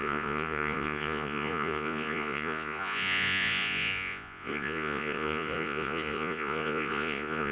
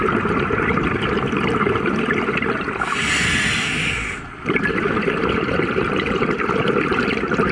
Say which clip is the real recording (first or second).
second